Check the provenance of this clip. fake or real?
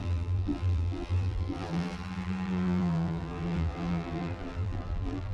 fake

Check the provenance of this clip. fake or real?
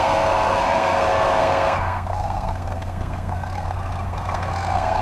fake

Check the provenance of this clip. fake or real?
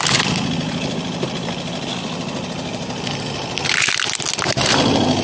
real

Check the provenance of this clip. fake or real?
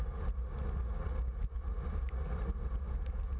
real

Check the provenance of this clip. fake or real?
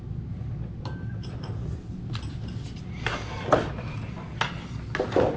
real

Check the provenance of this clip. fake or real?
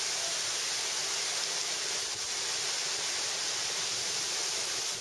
real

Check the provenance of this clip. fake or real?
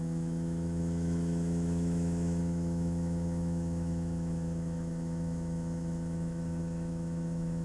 fake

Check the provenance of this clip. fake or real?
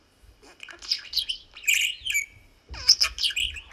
real